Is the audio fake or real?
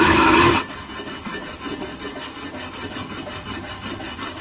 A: real